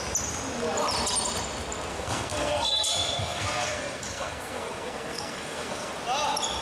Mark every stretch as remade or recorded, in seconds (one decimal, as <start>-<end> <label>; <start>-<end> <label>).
0.0-1.9 recorded; 1.9-5.9 remade; 5.9-6.6 recorded